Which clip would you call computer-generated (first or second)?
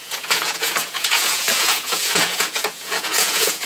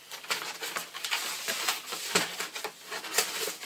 first